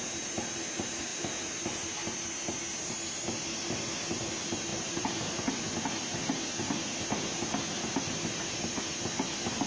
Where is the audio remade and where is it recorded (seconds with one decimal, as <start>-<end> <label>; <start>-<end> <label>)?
0.0-9.7 recorded